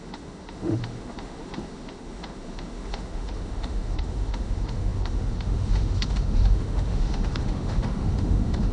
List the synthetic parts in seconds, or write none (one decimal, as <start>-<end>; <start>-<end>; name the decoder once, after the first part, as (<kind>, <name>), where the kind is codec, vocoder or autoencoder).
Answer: 0.0-8.7 (autoencoder, DAC-VAE)